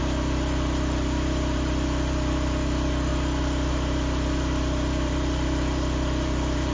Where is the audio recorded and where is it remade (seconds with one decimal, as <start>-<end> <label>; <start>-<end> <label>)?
0.0-3.1 remade; 3.1-3.7 recorded; 3.7-6.7 remade